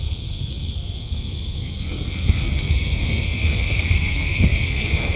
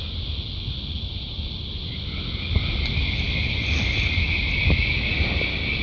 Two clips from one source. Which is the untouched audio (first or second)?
second